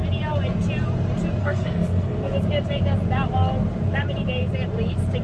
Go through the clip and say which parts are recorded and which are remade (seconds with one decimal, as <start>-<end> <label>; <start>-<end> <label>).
0.0-1.4 recorded; 1.4-2.3 remade; 2.3-5.2 recorded